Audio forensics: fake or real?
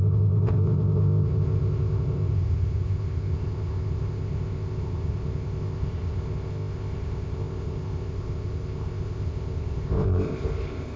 fake